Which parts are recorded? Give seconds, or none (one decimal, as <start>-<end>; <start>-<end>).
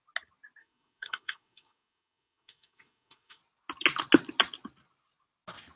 0.0-0.6; 3.4-5.8